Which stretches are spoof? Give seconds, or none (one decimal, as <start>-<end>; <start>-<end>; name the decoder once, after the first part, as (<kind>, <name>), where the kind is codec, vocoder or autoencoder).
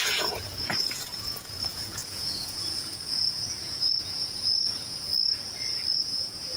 0.0-5.1 (vocoder, Vocos); 5.9-6.6